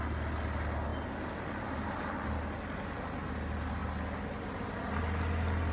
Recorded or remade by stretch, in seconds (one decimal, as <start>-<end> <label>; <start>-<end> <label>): 0.0-5.7 recorded